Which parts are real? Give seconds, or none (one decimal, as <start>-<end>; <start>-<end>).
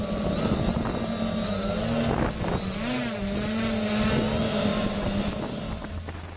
0.0-6.4